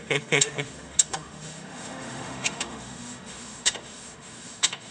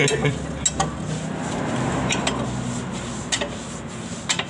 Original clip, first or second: second